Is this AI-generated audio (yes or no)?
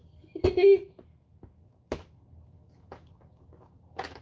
yes